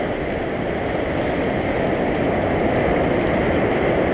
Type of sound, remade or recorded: recorded